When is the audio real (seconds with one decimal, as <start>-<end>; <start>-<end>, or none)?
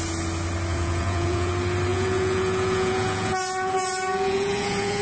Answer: 0.0-0.7; 1.5-1.9